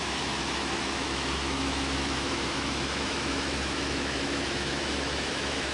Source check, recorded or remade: remade